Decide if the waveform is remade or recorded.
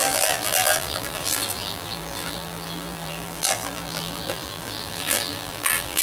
remade